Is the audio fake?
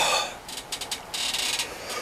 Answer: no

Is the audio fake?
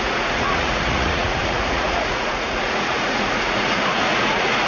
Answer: yes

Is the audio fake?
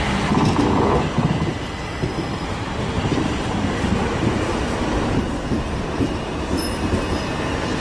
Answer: no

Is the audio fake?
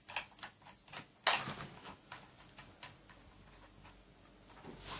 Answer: no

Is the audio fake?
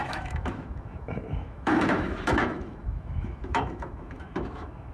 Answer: yes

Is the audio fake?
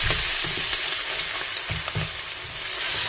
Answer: no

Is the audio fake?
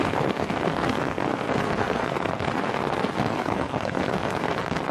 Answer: yes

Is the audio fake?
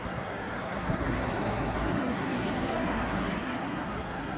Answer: yes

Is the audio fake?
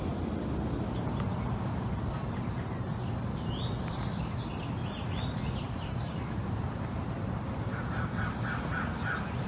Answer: no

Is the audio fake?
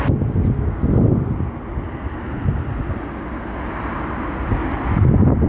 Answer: no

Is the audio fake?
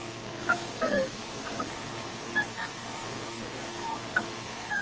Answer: yes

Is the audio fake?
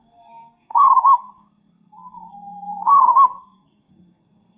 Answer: yes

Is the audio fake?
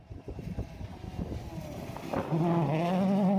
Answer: no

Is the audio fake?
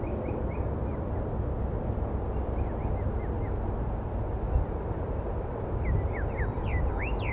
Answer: no